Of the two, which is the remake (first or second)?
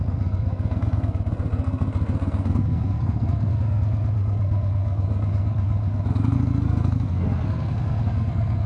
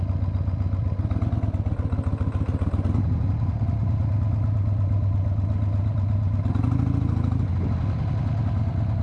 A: first